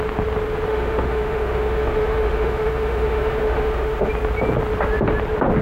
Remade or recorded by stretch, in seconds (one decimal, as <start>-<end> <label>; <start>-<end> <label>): 0.0-0.7 recorded; 0.7-4.1 remade; 4.1-5.6 recorded

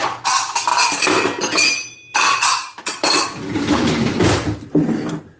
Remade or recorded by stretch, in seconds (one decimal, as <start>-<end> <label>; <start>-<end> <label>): 0.0-5.4 recorded

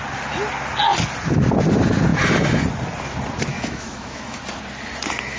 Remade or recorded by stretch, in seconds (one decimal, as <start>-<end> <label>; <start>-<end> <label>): 0.0-3.5 recorded; 3.5-4.4 remade; 4.4-5.4 recorded

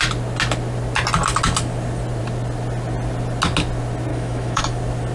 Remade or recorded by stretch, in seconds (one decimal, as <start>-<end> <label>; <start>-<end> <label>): 0.0-4.1 recorded; 4.1-4.6 remade; 4.6-5.1 recorded

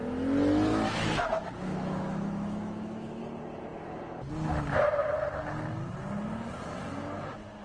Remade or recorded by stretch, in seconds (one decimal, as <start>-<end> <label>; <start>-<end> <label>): 0.0-0.7 recorded; 0.7-3.2 remade; 3.2-7.6 recorded